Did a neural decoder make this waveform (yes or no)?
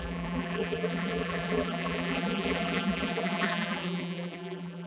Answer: yes